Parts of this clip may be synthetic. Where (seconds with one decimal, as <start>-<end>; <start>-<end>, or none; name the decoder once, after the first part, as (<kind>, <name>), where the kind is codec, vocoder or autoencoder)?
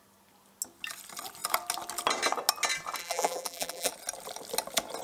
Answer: 3.0-3.9 (vocoder, BigVGAN v2)